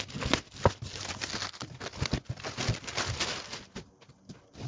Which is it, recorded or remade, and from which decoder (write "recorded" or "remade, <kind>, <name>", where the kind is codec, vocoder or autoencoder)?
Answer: recorded